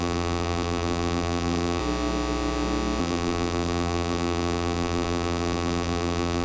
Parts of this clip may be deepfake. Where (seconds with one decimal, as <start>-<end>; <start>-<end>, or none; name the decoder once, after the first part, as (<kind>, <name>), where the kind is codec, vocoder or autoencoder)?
0.0-1.8 (vocoder, BigVGAN v2); 3.0-6.4